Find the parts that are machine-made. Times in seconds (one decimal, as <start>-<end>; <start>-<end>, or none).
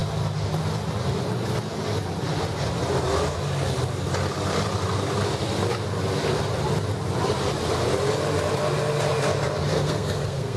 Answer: 9.7-10.6